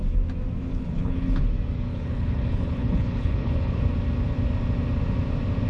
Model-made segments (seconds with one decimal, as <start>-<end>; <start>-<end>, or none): 0.7-1.4; 1.9-3.8